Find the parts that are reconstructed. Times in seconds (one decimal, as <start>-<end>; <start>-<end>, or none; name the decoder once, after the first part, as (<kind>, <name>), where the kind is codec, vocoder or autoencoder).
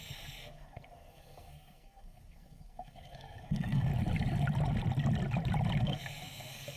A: 0.0-3.9 (codec, SNAC); 5.8-6.8